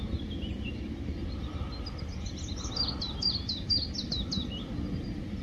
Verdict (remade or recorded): recorded